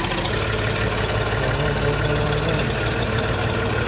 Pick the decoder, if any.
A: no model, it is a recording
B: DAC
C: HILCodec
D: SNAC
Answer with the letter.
A